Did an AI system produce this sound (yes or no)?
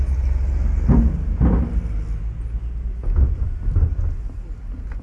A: no